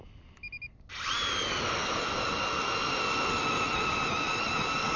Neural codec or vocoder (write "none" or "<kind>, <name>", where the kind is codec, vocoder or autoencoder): none